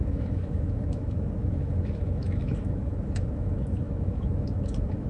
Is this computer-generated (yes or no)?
yes